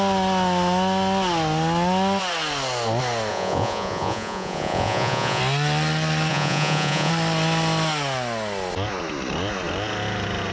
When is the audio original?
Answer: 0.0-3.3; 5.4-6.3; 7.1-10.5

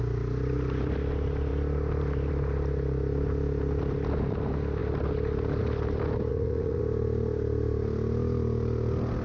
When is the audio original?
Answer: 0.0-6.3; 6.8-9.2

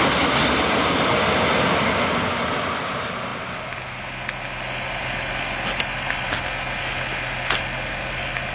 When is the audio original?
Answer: 0.0-8.5

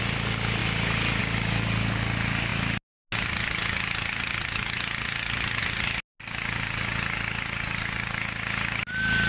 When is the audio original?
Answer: 0.0-9.3